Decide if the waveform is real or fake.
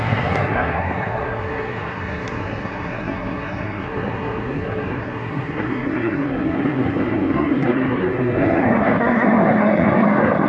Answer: fake